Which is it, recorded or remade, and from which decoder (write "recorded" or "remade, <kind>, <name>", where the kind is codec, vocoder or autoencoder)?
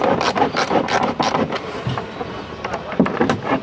recorded